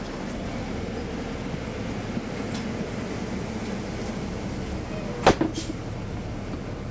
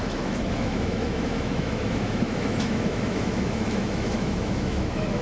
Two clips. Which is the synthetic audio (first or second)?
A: second